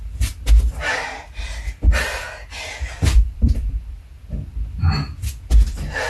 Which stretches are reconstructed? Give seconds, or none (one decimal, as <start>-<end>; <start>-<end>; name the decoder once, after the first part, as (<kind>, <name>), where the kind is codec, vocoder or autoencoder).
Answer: 0.0-0.6 (vocoder, BigVGAN v2); 3.1-3.7